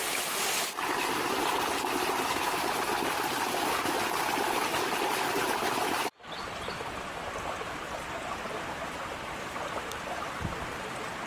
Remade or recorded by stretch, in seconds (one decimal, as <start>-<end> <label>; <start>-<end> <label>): 0.0-11.3 recorded